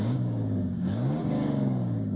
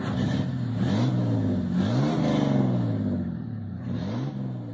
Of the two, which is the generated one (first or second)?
first